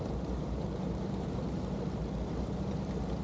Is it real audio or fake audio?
fake